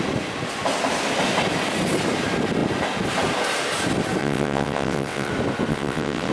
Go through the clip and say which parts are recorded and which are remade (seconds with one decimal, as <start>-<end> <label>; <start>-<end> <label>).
0.0-4.2 recorded; 4.2-5.3 remade; 5.3-5.7 recorded; 5.7-6.3 remade